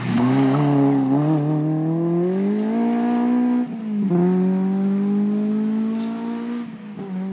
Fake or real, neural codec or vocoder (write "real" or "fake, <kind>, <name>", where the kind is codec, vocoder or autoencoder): real